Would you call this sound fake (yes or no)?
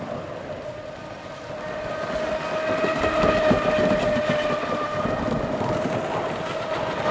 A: no